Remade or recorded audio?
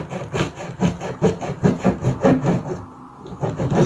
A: recorded